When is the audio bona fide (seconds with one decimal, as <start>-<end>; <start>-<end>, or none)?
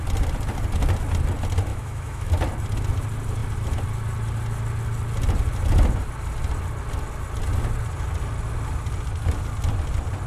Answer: 0.0-1.7; 2.3-10.3